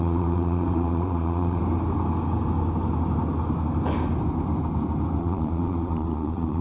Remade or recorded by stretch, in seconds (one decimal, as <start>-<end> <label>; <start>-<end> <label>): 0.0-1.6 remade; 1.6-5.2 recorded; 5.2-6.6 remade